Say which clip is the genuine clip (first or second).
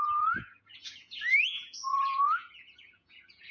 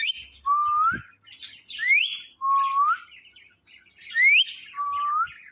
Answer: second